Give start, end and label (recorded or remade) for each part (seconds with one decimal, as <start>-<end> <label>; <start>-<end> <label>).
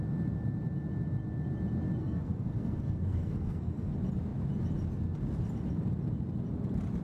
0.0-2.0 recorded; 2.0-3.9 remade; 3.9-7.0 recorded